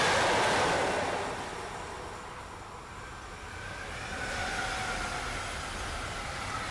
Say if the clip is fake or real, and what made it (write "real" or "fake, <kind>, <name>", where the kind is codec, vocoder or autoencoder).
real